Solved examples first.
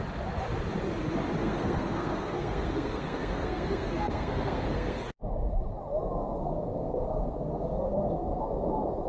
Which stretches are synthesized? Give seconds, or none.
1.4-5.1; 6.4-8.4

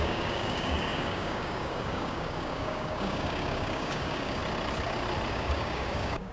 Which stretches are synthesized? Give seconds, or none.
0.0-4.4; 5.3-6.3

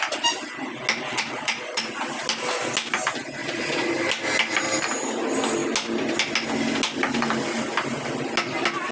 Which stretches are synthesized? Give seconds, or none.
1.1-1.8; 3.4-3.9